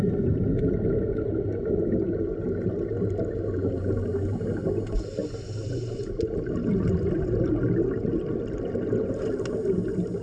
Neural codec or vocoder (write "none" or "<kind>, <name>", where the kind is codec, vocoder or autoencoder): none